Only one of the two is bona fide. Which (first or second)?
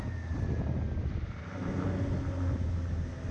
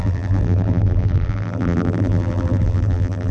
first